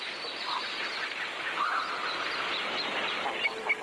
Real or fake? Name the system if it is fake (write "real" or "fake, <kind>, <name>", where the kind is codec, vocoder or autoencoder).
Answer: real